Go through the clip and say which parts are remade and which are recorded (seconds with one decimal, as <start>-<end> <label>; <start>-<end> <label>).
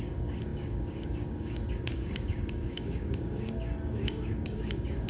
0.0-5.1 remade